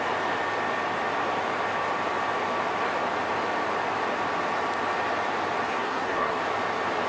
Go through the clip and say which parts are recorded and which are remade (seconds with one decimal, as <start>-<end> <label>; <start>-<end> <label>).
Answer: 0.0-5.7 recorded; 5.7-6.4 remade; 6.4-7.1 recorded